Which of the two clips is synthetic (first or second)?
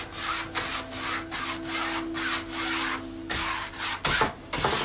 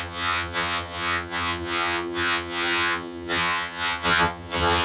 second